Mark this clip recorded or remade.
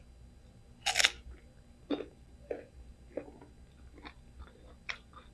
recorded